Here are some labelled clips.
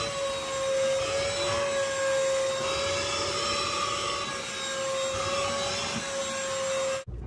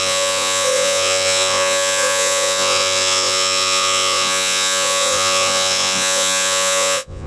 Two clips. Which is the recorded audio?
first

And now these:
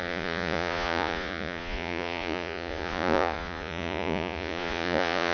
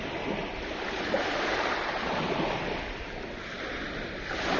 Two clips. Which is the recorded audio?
second